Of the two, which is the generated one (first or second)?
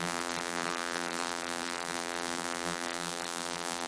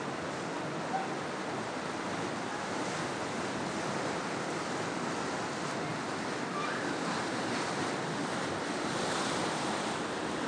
first